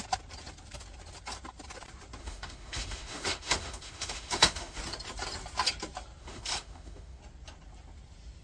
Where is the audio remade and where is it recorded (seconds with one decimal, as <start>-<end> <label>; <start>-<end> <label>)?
0.0-2.2 recorded; 2.2-4.8 remade; 4.8-6.2 recorded; 6.2-7.2 remade; 7.2-8.4 recorded